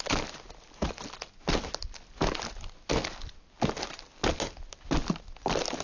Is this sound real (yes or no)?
yes